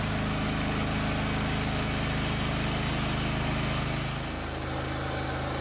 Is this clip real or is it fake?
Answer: real